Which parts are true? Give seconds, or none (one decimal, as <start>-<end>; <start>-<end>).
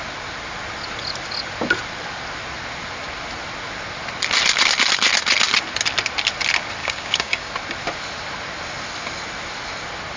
0.0-6.8; 7.5-10.2